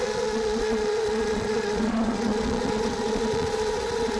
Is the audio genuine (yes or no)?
no